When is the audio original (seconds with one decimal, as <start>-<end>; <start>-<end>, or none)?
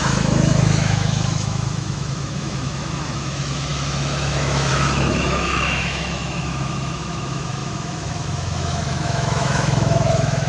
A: none